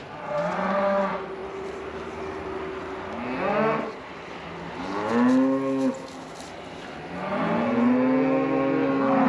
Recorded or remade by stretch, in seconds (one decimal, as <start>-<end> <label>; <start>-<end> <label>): 0.0-9.3 recorded